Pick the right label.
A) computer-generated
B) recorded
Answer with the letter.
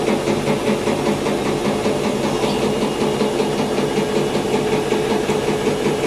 B